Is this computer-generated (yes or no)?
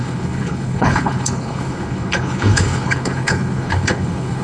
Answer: yes